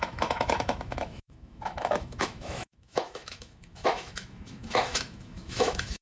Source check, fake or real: fake